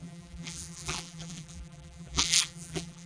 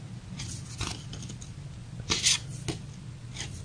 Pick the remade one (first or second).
first